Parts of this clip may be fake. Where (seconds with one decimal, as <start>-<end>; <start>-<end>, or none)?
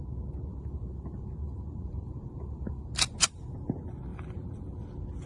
0.5-2.9; 4.1-4.7